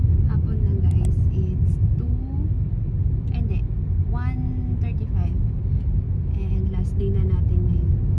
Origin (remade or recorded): recorded